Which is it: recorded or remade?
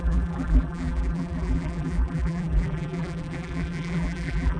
remade